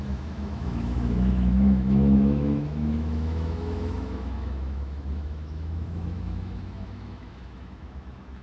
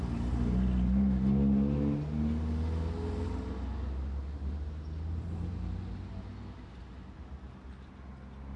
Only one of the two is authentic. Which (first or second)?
second